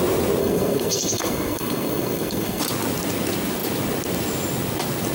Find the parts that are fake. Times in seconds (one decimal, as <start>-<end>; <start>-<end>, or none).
0.4-2.6